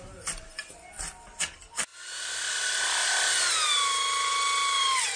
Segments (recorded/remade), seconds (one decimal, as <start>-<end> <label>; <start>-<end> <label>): 0.0-5.2 recorded